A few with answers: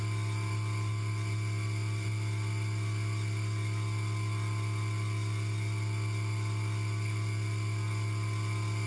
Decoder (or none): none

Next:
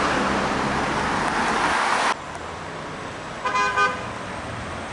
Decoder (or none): none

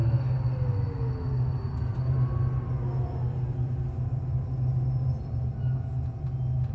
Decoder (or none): none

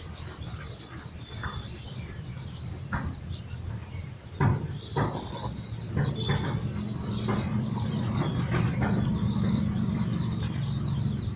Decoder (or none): vocoder, BigVGAN v2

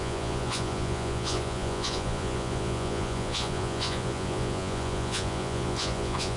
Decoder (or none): vocoder, Vocos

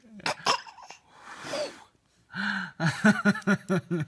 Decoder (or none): none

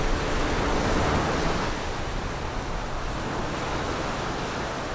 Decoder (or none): none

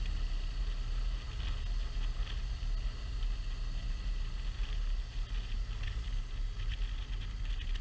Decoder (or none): none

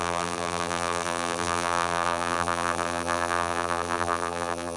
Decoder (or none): vocoder, BigVGAN v2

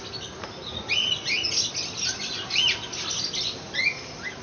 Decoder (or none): none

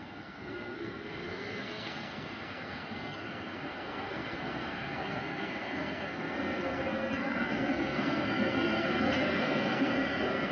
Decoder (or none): codec, SNAC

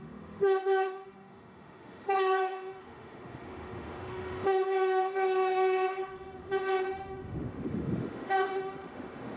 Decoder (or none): autoencoder, DAC-VAE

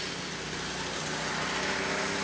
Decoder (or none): none